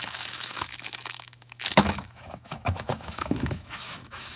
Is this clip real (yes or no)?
no